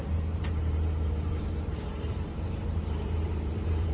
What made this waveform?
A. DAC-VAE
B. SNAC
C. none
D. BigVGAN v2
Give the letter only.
D